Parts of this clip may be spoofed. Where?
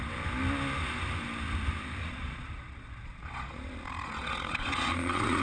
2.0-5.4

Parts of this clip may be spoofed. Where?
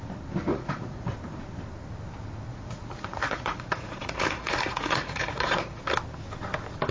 0.5-1.1; 2.5-5.8